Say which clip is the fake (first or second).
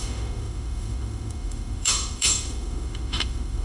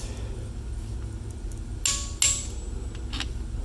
first